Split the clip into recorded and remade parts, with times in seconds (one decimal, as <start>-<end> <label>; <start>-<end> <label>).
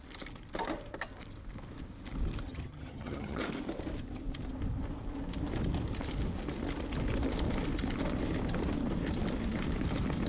0.0-2.5 recorded; 2.5-3.4 remade; 3.4-10.3 recorded